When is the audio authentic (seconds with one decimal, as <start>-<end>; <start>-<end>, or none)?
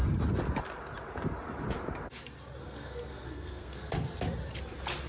0.0-2.6; 3.9-5.1